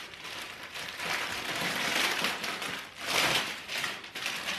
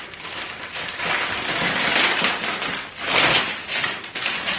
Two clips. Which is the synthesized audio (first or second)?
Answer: first